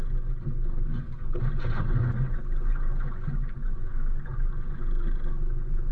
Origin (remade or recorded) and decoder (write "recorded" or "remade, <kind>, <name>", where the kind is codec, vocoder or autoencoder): remade, vocoder, Vocos